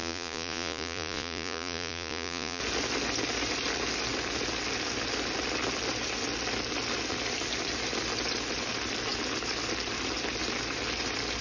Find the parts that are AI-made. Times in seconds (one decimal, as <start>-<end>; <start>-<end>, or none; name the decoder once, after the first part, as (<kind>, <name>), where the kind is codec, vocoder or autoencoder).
0.0-2.6 (vocoder, Vocos)